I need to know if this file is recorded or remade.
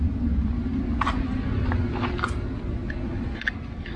recorded